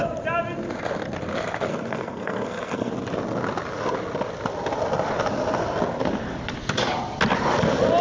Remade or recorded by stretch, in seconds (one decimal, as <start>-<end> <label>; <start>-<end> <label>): 0.0-1.7 recorded; 1.7-2.9 remade; 2.9-8.0 recorded